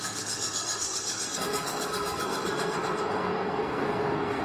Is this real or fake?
fake